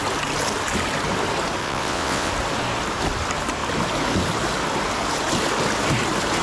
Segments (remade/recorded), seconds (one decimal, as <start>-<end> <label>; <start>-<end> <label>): 0.0-1.6 recorded; 1.6-2.3 remade; 2.3-6.4 recorded